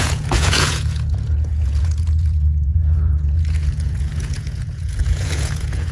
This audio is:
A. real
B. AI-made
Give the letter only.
B